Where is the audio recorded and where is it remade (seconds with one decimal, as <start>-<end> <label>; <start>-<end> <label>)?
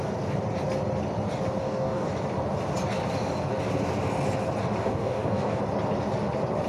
0.0-1.6 recorded; 1.6-2.1 remade; 2.1-4.8 recorded; 4.8-5.6 remade; 5.6-6.7 recorded